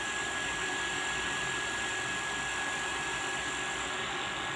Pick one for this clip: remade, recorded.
recorded